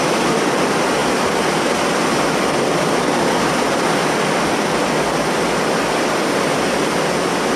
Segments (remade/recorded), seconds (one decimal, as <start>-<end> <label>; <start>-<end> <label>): 0.0-7.6 recorded